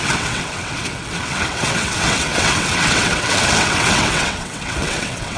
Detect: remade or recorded remade